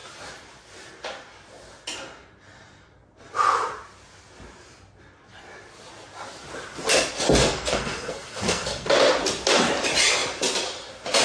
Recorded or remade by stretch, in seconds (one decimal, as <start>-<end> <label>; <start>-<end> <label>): 0.0-7.4 recorded; 7.4-8.9 remade; 8.9-11.2 recorded